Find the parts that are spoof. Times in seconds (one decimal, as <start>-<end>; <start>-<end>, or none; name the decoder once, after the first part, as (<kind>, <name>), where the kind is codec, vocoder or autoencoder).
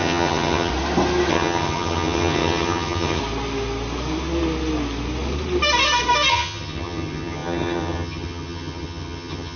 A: 0.0-0.7 (vocoder, HiFi-GAN); 1.3-3.2; 6.3-9.6